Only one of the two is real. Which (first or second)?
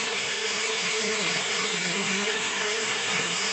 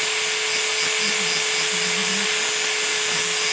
second